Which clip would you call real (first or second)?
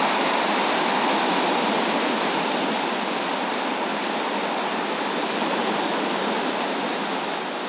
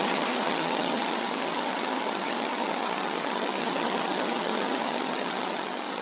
first